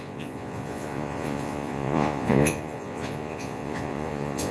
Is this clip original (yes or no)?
no